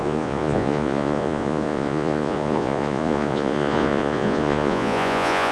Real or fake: fake